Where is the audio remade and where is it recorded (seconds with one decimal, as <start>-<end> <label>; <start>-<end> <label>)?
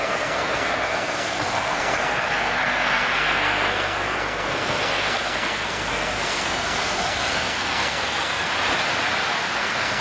0.0-8.5 remade; 8.5-9.3 recorded; 9.3-10.0 remade